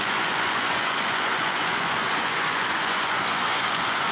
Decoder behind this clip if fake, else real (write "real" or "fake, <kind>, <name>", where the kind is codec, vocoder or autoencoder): fake, vocoder, Vocos